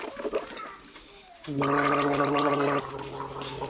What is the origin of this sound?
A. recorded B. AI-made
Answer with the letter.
A